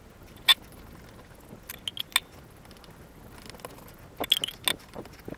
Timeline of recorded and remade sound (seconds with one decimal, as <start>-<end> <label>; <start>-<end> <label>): 0.0-5.4 recorded